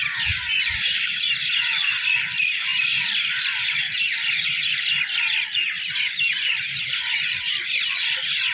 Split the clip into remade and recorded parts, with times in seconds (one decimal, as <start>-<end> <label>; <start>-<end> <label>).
0.0-8.5 recorded